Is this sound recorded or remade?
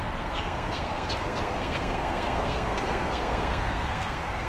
remade